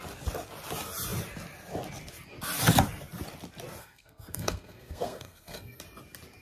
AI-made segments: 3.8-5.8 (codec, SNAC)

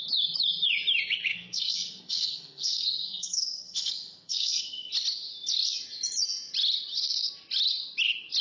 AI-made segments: 1.3-4.9 (codec, SNAC)